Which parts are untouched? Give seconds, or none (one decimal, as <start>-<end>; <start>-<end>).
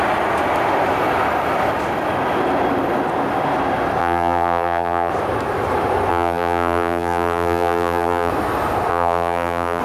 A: 0.0-4.0; 5.1-6.1; 8.3-8.9